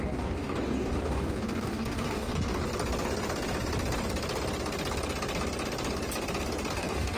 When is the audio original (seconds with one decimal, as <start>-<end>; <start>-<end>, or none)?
2.6-6.7